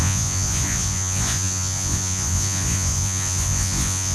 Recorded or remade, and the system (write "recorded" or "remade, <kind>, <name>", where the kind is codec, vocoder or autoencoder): remade, vocoder, Vocos